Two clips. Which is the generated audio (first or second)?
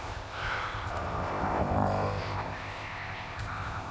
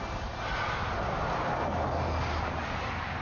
first